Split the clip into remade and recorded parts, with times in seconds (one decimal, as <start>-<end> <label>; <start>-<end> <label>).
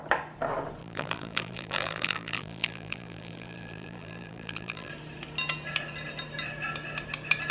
0.0-0.8 recorded; 0.8-4.9 remade; 4.9-7.5 recorded